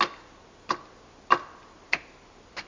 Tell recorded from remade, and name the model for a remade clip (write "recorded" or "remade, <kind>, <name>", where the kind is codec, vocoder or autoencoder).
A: recorded